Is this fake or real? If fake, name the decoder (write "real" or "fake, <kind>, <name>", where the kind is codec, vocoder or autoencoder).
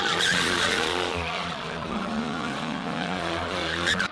fake, vocoder, Vocos